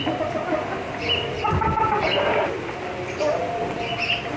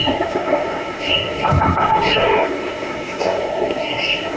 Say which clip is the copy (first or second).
second